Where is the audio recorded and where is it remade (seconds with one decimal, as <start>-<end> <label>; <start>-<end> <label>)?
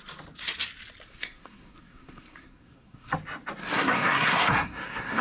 0.0-1.1 recorded; 1.1-3.1 remade; 3.1-3.6 recorded; 3.6-5.2 remade